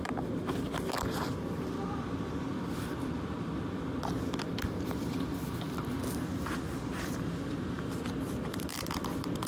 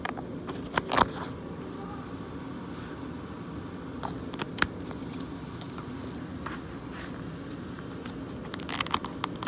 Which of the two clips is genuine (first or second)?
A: second